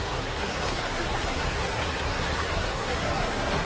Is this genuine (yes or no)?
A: no